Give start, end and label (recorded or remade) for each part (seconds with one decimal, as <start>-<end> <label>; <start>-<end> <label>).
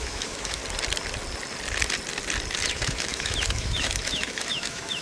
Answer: 0.0-0.6 remade; 0.6-2.7 recorded; 2.7-5.0 remade